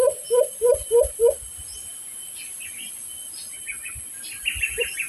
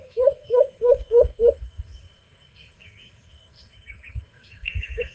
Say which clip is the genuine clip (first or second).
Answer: first